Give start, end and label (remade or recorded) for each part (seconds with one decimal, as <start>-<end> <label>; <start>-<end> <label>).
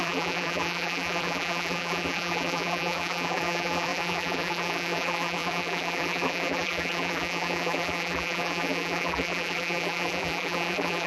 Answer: 0.0-11.1 remade